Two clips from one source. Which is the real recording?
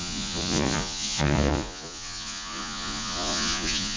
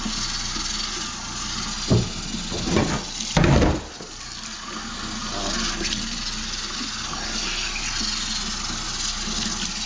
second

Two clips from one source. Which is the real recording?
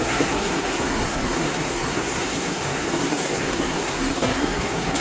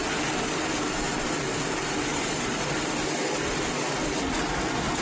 second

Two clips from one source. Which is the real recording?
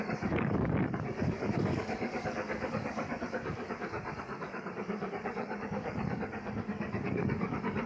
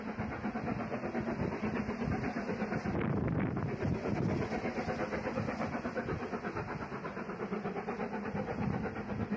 second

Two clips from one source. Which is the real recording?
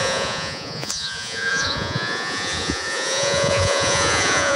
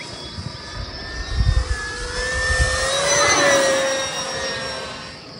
second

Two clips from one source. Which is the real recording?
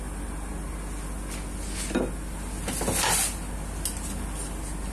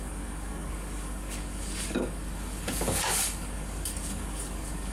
first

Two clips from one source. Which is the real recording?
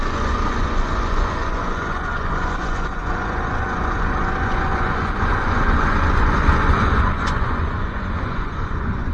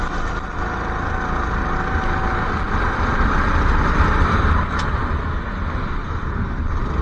second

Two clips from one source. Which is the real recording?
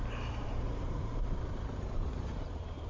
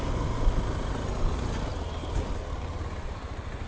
second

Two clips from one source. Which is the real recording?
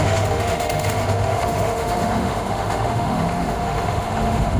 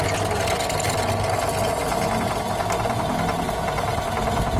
second